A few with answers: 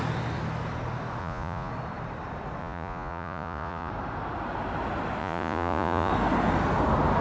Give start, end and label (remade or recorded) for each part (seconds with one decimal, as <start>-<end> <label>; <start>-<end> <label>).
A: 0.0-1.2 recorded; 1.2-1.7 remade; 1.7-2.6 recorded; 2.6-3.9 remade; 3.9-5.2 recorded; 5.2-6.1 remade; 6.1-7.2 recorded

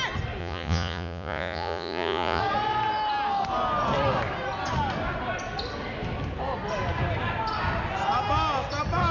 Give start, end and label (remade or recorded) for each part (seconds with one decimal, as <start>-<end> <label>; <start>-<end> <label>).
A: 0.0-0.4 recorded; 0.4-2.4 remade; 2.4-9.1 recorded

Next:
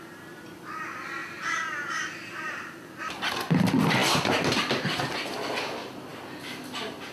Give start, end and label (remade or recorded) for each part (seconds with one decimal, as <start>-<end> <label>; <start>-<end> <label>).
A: 0.0-7.1 recorded